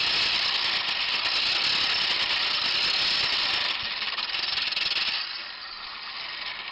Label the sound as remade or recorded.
recorded